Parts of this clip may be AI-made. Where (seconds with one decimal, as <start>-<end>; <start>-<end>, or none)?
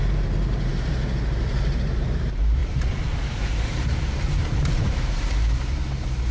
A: 0.0-0.7; 1.4-6.3